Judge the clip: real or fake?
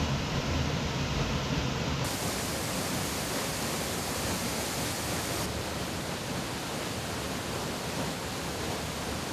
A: real